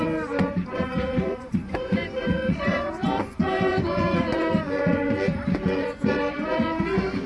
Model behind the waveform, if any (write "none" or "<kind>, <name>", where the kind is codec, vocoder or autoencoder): vocoder, Vocos